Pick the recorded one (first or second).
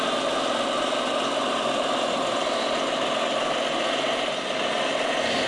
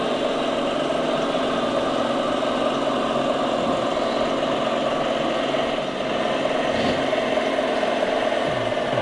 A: second